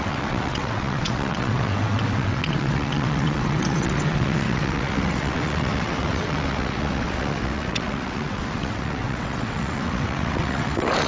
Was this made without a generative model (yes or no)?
no